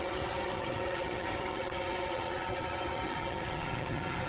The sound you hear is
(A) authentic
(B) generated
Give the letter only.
B